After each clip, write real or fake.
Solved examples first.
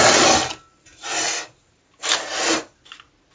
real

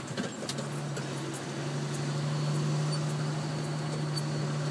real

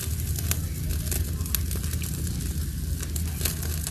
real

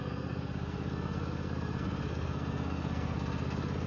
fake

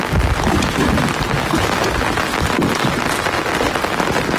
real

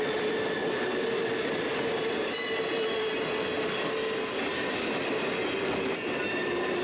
real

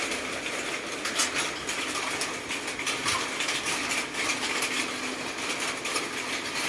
real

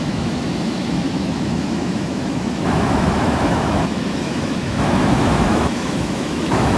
fake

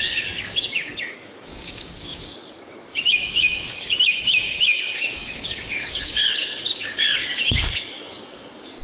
fake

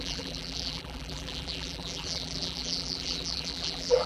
fake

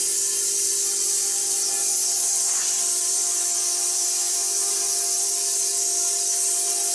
real